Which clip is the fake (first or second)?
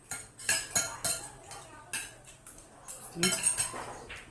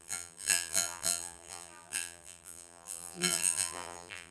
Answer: second